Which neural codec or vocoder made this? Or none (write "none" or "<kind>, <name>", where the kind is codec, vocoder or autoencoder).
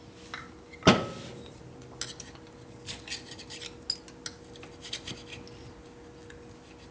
none